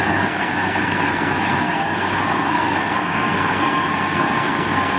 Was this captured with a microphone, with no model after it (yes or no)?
no